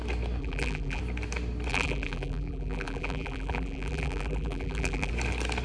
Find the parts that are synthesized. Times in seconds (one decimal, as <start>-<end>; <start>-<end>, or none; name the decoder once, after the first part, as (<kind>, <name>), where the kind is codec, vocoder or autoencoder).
0.4-1.0 (vocoder, BigVGAN v2); 1.7-5.1